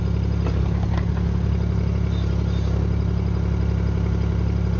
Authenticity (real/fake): real